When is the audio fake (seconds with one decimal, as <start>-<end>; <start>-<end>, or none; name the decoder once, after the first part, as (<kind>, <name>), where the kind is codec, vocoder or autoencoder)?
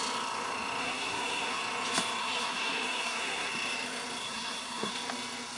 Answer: 0.8-1.6 (codec, SNAC); 2.2-3.5; 4.2-4.9